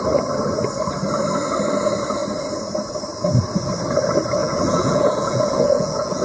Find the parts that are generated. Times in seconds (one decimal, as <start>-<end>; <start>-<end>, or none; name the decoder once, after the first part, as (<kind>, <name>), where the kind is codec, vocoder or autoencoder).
4.4-6.2 (vocoder, Vocos)